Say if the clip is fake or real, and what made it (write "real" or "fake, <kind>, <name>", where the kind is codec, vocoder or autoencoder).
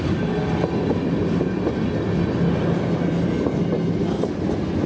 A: real